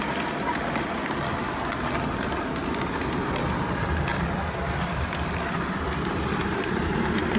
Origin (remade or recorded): recorded